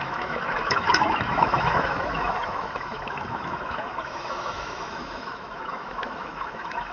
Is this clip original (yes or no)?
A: no